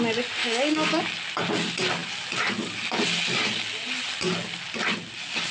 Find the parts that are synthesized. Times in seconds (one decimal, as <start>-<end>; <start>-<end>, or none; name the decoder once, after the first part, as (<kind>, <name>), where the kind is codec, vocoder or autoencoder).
0.4-1.0 (codec, DAC)